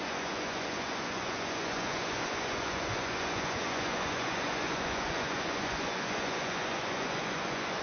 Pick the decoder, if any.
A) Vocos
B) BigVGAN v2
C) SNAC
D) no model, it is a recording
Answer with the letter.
A